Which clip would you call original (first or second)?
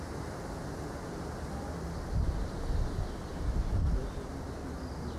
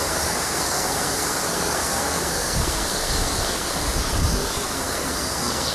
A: first